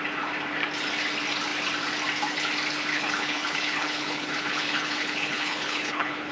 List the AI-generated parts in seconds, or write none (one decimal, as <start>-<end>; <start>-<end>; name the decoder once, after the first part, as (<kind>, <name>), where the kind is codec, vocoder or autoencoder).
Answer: 2.9-6.3 (codec, HILCodec)